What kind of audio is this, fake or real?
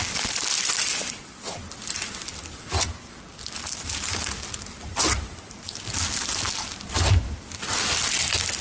real